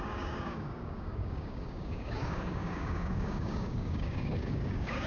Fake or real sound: fake